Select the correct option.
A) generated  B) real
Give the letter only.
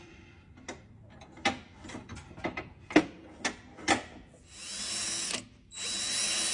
B